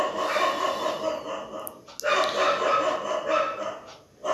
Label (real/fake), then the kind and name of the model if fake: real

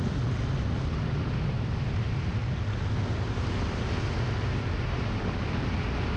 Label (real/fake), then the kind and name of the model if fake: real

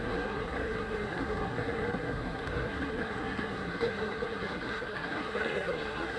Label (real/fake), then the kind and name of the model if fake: fake, codec, SNAC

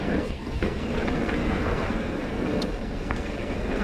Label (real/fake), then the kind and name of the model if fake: fake, codec, SNAC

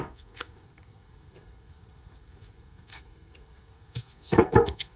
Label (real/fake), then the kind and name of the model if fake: fake, codec, SNAC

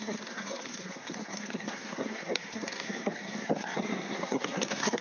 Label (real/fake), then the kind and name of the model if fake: fake, codec, SNAC